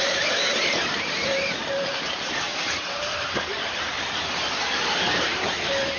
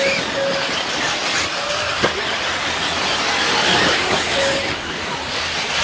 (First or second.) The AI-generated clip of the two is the first